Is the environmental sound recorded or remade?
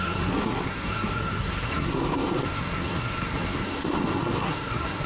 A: remade